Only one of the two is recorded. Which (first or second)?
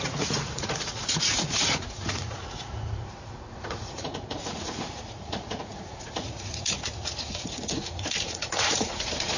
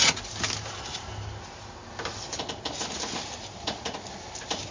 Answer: second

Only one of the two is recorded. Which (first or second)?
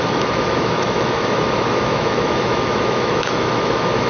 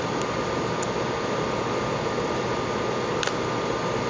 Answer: second